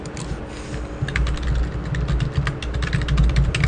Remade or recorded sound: recorded